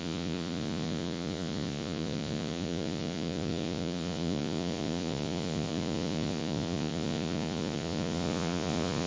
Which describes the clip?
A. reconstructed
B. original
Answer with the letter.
A